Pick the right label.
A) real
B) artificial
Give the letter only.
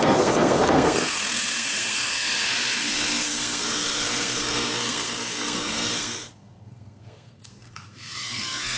B